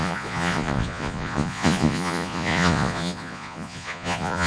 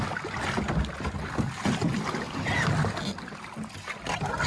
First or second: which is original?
second